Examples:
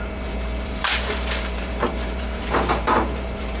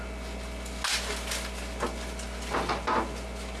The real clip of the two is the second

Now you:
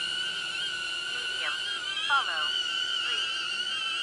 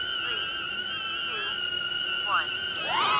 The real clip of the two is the second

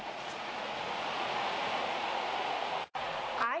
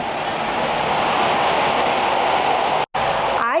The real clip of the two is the second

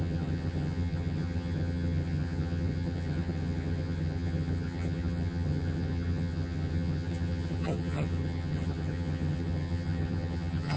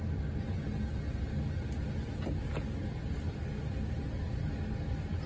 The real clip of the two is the second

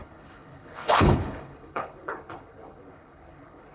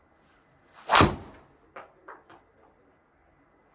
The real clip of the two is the second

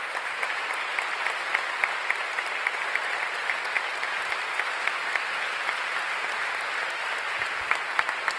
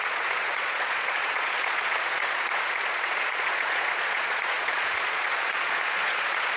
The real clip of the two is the first